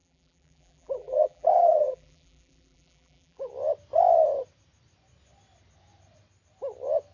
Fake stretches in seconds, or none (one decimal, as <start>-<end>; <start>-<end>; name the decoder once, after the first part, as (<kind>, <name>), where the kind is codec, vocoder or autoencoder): 0.0-3.5 (vocoder, BigVGAN v2)